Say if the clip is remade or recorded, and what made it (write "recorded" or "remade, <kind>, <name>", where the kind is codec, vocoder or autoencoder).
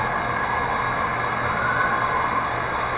recorded